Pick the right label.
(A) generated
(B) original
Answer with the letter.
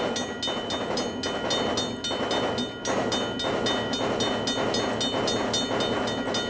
B